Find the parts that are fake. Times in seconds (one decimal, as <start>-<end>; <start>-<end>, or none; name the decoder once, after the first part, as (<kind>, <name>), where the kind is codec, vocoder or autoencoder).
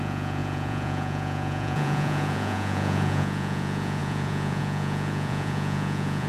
0.0-6.3 (vocoder, Vocos)